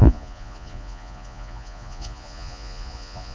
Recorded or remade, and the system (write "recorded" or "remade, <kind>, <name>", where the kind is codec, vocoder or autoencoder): remade, vocoder, Vocos